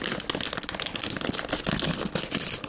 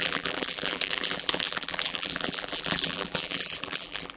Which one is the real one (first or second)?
first